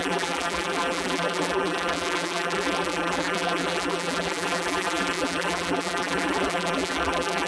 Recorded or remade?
remade